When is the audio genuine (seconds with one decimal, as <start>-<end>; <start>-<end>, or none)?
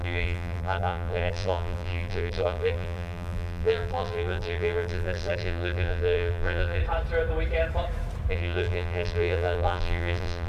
6.8-8.3